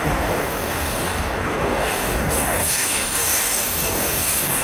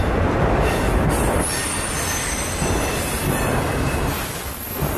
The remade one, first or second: first